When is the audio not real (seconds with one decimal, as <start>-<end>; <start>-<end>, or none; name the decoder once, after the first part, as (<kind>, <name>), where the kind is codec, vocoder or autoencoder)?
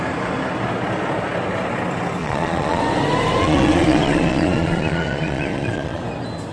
2.2-2.8 (vocoder, Vocos); 3.4-6.0